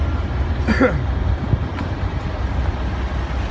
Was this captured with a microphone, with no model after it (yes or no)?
yes